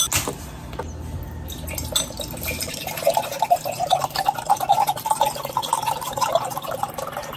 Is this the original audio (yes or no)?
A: yes